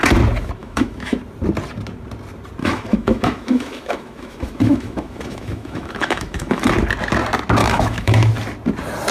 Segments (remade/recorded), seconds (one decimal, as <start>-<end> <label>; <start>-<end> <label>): 0.0-0.6 recorded; 0.6-1.2 remade; 1.2-2.6 recorded; 2.6-6.7 remade; 6.7-7.6 recorded; 7.6-8.3 remade; 8.3-9.1 recorded